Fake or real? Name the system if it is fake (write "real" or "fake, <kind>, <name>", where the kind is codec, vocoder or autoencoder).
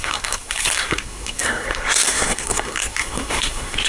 fake, codec, SNAC